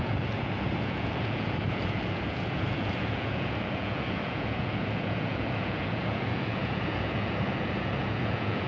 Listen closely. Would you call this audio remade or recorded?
remade